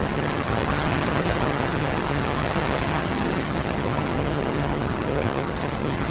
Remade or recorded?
remade